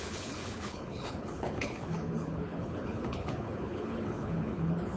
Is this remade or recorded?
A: remade